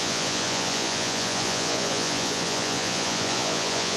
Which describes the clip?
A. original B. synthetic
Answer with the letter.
B